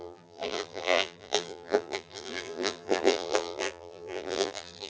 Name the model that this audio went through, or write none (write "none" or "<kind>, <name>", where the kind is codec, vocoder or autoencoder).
vocoder, BigVGAN v2